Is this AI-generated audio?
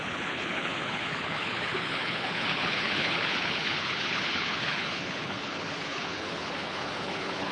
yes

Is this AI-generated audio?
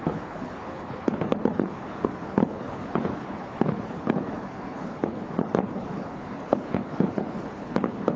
yes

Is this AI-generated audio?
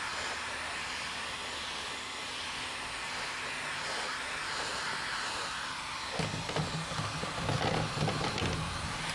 no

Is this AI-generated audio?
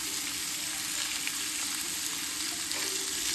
no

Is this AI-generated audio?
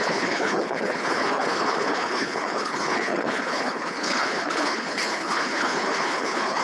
yes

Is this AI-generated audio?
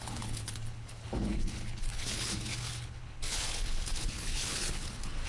yes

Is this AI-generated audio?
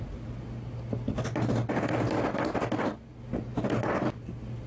no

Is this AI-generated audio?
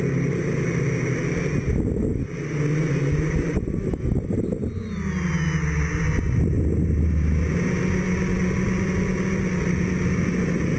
no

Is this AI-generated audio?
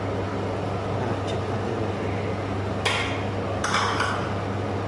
no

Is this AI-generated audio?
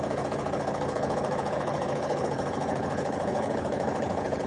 yes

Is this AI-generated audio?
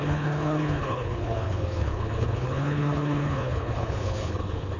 yes